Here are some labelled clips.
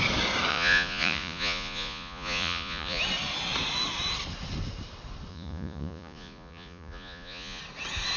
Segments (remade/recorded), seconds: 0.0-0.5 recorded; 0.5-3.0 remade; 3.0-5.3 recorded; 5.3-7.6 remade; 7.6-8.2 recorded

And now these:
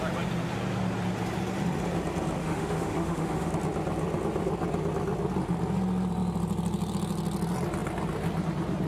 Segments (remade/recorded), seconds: 0.0-2.4 recorded; 2.4-3.5 remade; 3.5-8.9 recorded

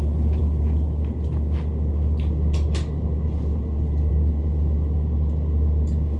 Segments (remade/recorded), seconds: 0.0-6.2 recorded

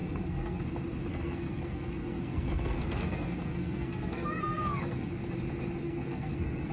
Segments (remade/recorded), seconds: 0.0-0.6 remade; 0.6-1.1 recorded; 1.1-5.1 remade; 5.1-5.8 recorded; 5.8-6.7 remade